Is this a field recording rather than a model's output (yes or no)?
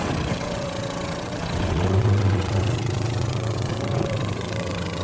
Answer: no